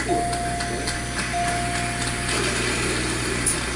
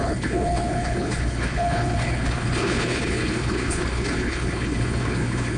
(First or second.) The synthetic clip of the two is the second